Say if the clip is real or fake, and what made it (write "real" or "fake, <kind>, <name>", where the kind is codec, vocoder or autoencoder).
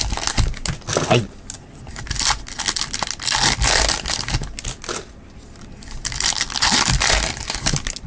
real